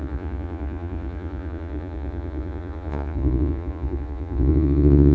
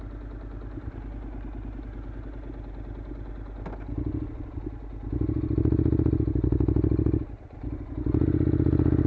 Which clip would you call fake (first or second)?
first